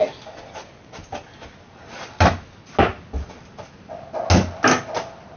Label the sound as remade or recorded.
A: recorded